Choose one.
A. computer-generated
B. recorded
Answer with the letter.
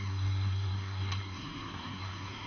A